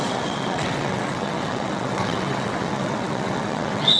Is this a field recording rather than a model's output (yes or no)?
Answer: no